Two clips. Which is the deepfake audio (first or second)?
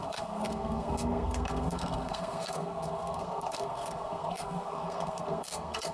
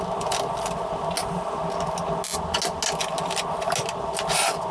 first